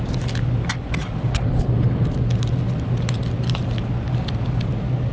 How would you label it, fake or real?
real